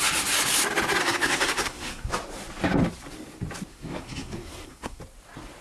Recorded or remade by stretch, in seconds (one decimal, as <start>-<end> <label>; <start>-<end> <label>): 0.0-1.0 recorded; 1.0-2.1 remade; 2.1-3.7 recorded; 3.7-5.0 remade; 5.0-5.6 recorded

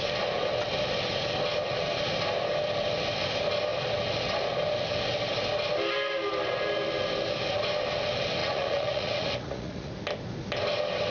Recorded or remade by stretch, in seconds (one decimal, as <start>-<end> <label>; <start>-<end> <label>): 0.0-8.4 recorded; 8.4-9.9 remade; 9.9-11.1 recorded

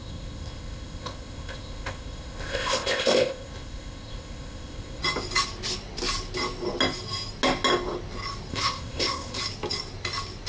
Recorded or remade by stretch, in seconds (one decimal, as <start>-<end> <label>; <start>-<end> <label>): 0.0-5.0 remade; 5.0-8.5 recorded; 8.5-9.4 remade; 9.4-10.5 recorded